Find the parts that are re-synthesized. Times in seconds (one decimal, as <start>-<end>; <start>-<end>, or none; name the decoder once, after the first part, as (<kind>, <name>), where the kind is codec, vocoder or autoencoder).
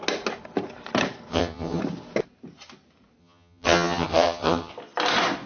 1.3-1.8 (vocoder, HiFi-GAN); 3.2-4.7